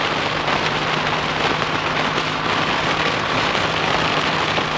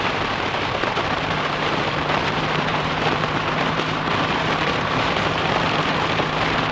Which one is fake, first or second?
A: second